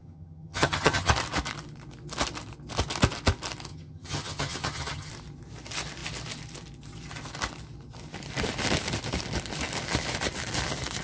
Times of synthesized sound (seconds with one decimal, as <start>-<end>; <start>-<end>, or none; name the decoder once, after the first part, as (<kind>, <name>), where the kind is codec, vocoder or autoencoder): 0.0-1.1 (vocoder, HiFi-GAN); 3.7-5.1